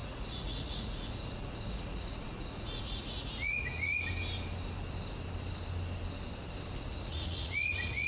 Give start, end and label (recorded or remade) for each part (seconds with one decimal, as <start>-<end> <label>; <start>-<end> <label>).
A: 0.0-4.0 remade; 4.0-6.9 recorded; 6.9-8.1 remade